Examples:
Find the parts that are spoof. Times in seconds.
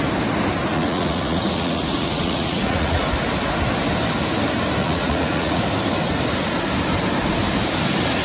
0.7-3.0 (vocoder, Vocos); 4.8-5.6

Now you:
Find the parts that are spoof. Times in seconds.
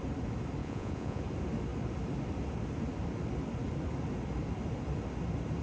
0.6-1.2 (vocoder, Vocos)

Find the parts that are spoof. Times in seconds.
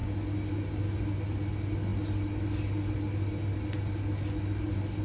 none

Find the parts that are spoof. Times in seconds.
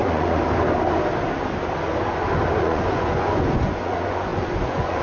0.0-0.4 (vocoder, Vocos); 2.6-5.0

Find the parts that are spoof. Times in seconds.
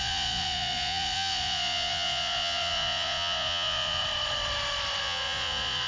0.0-4.0 (vocoder, Vocos); 5.0-5.9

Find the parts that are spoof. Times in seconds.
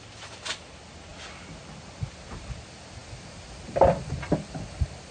none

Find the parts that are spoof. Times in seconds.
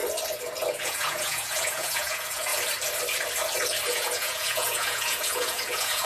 0.7-2.5 (vocoder, Vocos); 3.9-6.1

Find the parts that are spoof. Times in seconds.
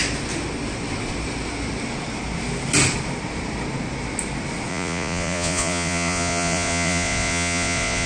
4.7-8.1 (vocoder, Vocos)